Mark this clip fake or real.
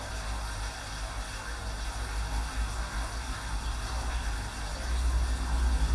real